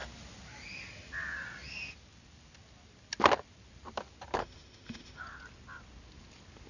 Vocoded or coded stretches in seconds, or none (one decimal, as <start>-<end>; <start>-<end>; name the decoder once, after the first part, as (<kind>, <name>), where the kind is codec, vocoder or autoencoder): 4.4-5.2 (autoencoder, DAC-VAE)